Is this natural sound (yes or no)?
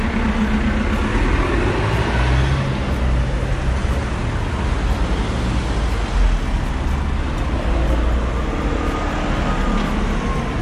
yes